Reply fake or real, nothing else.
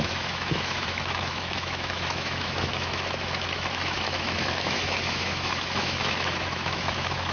fake